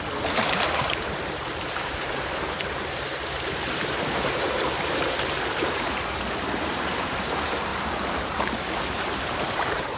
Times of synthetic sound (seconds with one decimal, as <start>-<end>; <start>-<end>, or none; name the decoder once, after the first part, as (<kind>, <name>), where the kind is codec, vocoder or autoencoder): 0.0-10.0 (vocoder, BigVGAN v2)